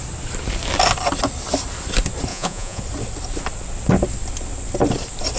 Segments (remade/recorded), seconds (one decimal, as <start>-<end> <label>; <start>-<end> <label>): 0.0-2.3 recorded; 2.3-2.8 remade; 2.8-5.4 recorded